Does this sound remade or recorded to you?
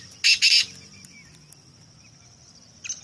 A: recorded